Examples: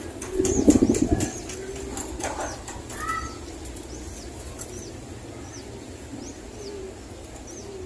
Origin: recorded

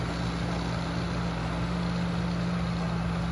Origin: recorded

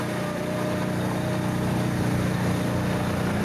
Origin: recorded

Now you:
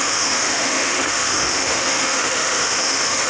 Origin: remade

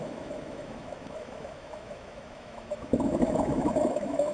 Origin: remade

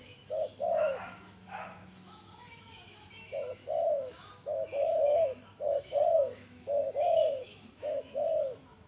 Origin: remade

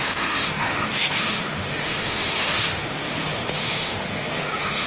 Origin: remade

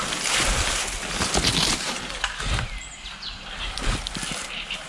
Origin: recorded